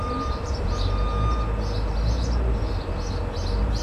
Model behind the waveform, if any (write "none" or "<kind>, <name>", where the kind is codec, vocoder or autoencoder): none